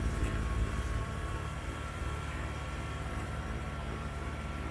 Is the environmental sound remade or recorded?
remade